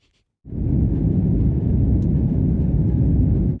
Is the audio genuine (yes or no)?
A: yes